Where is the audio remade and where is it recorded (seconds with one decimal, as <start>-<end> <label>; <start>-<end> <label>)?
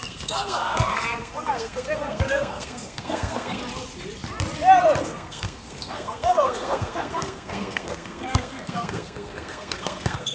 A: 0.0-3.6 remade; 3.6-5.0 recorded; 5.0-10.3 remade